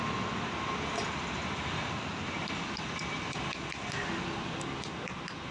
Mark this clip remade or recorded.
recorded